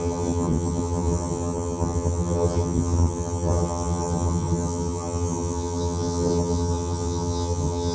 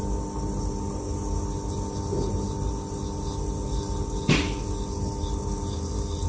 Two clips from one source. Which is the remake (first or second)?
first